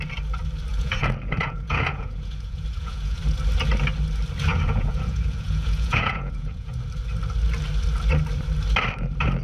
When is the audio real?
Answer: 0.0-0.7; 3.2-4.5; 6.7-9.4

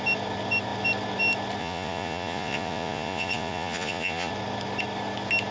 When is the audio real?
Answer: 0.0-1.6; 4.3-5.5

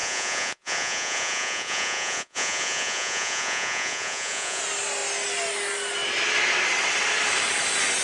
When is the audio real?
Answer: 4.6-8.0

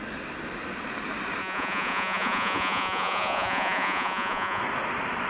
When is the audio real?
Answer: 0.0-1.4; 4.6-5.3

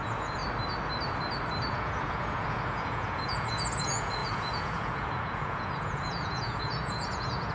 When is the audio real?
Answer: 0.4-1.7

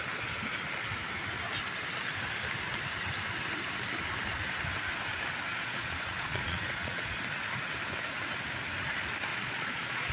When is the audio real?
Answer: 0.0-5.5; 7.2-9.3

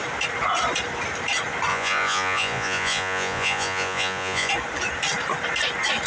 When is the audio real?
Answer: 0.0-1.7; 4.5-6.1